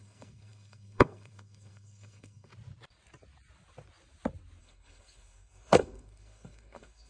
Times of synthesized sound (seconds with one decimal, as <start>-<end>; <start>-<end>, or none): 0.0-2.5; 4.6-7.1